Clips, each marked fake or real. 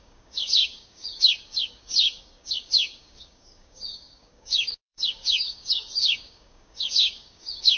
fake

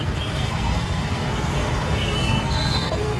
fake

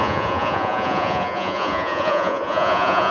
fake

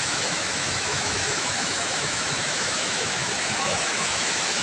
fake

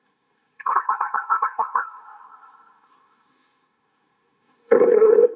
fake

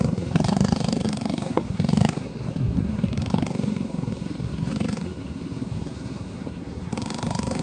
fake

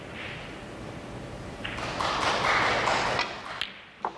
real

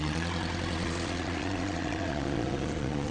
fake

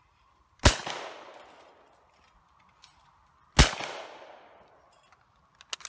real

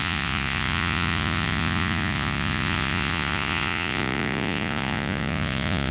fake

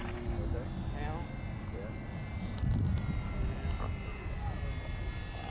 real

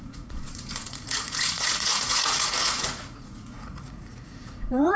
fake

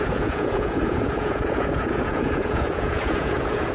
fake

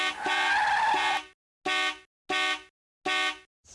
real